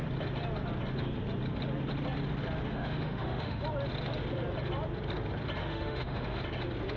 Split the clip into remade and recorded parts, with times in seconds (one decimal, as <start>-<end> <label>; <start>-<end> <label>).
0.0-2.7 recorded; 2.7-3.6 remade; 3.6-5.6 recorded; 5.6-6.4 remade; 6.4-7.0 recorded